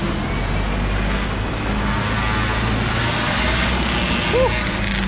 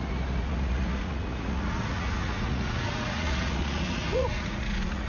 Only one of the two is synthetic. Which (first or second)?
second